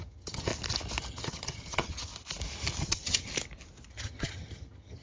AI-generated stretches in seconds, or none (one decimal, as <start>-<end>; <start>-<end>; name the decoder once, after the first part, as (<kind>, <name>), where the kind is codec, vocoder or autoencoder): 0.0-0.5 (vocoder, HiFi-GAN); 1.0-2.1; 2.8-3.3; 3.9-5.0